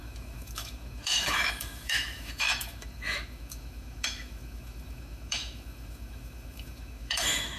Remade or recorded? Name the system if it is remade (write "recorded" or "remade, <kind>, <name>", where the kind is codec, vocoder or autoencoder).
remade, autoencoder, DAC-VAE